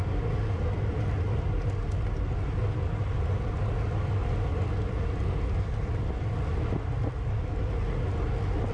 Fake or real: real